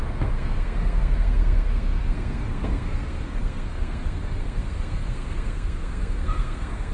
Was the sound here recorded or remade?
remade